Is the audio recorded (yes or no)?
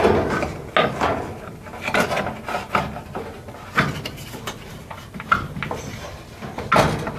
yes